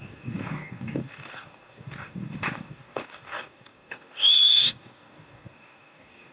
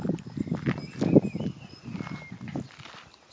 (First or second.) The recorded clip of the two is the second